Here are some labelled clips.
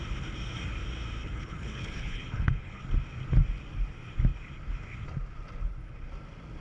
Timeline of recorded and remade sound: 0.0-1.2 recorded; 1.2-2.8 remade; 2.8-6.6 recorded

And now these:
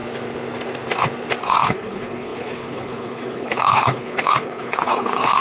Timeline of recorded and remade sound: 0.0-1.4 recorded; 1.4-5.4 remade

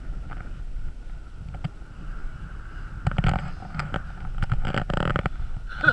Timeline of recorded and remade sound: 0.0-5.9 recorded

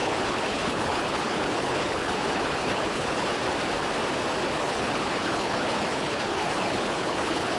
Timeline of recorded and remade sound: 0.0-3.4 remade; 3.4-4.6 recorded; 4.6-7.6 remade

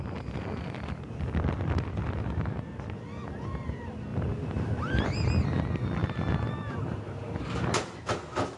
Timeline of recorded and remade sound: 0.0-8.6 recorded

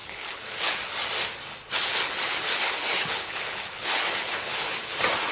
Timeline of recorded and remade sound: 0.0-0.8 remade; 0.8-1.5 recorded; 1.5-4.7 remade; 4.7-5.3 recorded

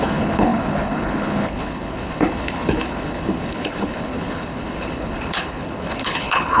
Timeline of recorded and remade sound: 0.0-6.6 remade

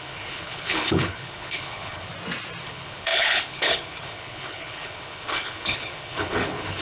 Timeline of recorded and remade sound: 0.0-2.1 remade; 2.1-2.6 recorded; 2.6-6.8 remade